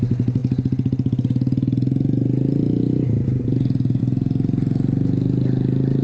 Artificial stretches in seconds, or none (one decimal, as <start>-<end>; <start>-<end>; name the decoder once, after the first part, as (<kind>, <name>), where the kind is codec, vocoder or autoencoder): none